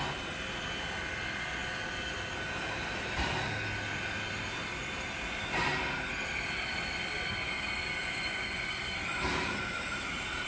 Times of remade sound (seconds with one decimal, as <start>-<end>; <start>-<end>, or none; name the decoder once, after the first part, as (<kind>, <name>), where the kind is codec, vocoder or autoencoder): 8.0-8.8 (vocoder, Vocos)